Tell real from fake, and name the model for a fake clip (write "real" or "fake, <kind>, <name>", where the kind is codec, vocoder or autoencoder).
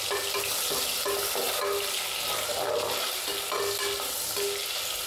real